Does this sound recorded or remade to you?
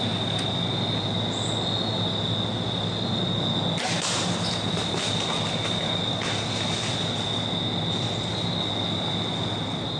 recorded